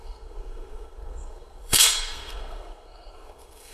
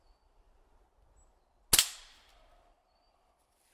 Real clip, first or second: second